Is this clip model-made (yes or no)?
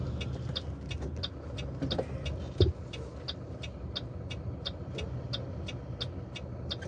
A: no